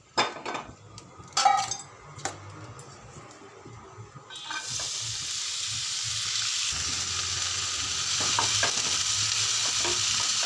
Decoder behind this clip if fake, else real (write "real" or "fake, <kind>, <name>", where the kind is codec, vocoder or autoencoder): real